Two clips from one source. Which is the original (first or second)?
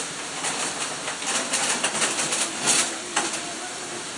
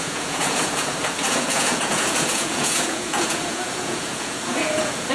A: first